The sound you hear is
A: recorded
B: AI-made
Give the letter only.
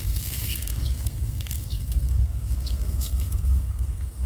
B